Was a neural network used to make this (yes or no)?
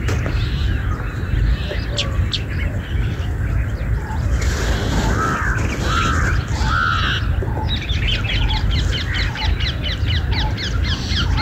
no